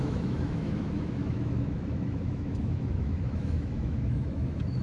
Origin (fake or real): fake